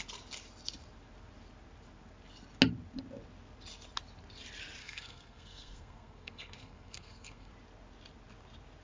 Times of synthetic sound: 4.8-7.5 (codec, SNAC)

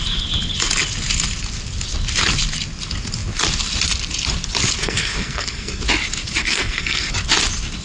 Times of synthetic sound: 4.8-5.8 (codec, SNAC); 6.4-7.1

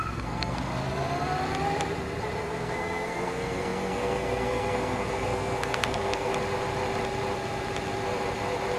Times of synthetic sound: 0.0-0.7 (codec, SNAC); 2.4-6.3

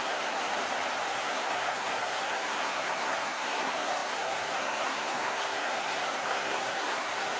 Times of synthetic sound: 0.0-0.5 (codec, SNAC); 1.1-7.4

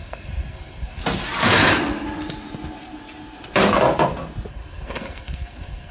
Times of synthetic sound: 0.0-1.0 (codec, SNAC); 4.5-5.9

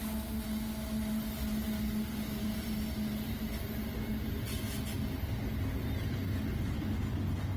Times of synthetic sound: none

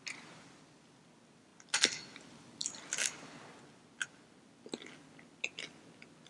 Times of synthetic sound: none

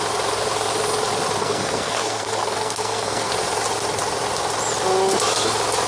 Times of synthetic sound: 1.4-3.3 (codec, SNAC)